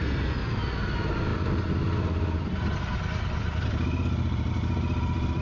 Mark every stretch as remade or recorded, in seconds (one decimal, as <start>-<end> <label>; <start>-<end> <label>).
0.0-5.4 recorded